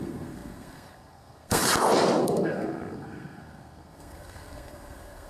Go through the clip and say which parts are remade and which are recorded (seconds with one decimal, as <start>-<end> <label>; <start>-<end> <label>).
0.0-1.6 remade; 1.6-2.2 recorded; 2.2-5.3 remade